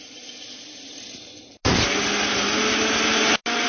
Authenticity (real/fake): real